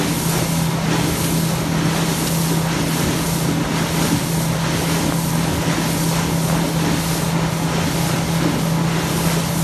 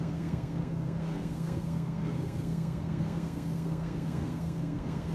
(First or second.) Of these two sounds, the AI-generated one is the second